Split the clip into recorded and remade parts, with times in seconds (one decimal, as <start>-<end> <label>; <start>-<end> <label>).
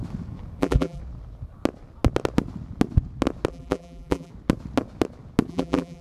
0.0-0.6 recorded; 0.6-1.0 remade; 1.0-3.5 recorded; 3.5-4.3 remade; 4.3-5.5 recorded; 5.5-6.0 remade